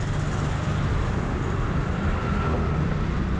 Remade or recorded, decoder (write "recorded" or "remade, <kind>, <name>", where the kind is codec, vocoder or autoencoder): recorded